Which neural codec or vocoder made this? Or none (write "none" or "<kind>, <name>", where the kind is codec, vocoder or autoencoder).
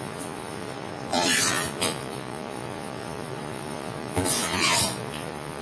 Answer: vocoder, Vocos